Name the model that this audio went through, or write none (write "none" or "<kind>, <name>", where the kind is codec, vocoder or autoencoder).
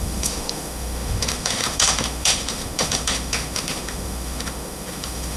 autoencoder, DAC-VAE